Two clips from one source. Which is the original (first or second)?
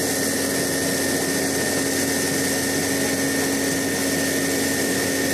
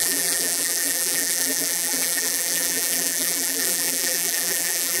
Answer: first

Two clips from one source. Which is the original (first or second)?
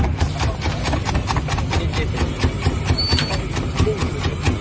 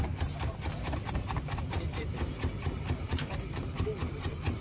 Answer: first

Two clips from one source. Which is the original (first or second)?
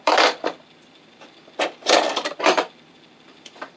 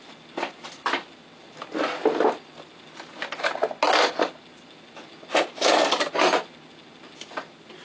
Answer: second